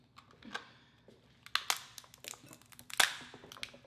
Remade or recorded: recorded